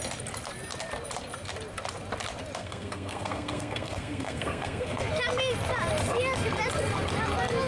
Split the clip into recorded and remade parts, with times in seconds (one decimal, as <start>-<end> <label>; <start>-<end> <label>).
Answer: 0.0-2.6 recorded; 2.6-5.0 remade; 5.0-7.7 recorded